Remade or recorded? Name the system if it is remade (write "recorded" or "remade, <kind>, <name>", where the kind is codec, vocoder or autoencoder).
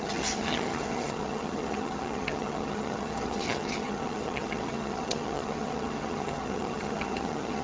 remade, vocoder, HiFi-GAN